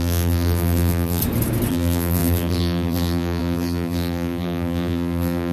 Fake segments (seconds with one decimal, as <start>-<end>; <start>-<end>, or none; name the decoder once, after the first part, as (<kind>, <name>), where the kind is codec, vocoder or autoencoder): 0.0-1.2 (vocoder, BigVGAN v2); 1.7-5.5